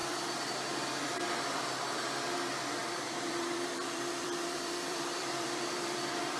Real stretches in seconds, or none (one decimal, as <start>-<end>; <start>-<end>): 0.0-2.8